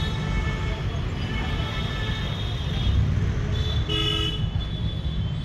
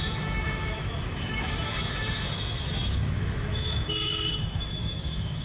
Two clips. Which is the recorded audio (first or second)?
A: first